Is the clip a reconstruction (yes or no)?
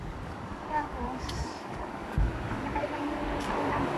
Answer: yes